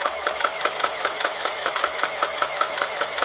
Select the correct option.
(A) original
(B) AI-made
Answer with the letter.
B